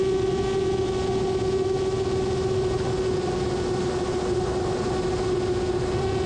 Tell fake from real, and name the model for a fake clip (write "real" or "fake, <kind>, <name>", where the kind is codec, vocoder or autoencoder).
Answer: real